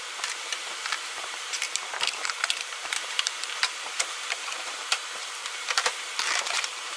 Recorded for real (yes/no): no